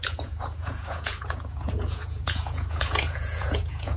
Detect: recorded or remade remade